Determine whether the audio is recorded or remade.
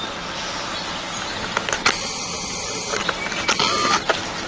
recorded